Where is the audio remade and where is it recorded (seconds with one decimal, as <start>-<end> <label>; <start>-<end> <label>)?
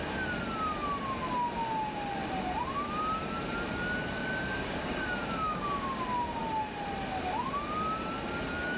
0.0-4.2 recorded; 4.2-6.0 remade; 6.0-8.8 recorded